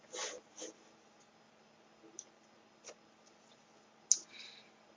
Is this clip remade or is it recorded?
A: recorded